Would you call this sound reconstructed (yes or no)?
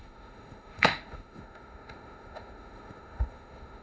yes